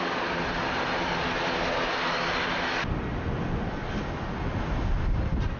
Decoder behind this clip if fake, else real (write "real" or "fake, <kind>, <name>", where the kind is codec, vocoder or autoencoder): real